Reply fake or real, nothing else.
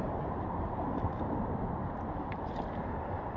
fake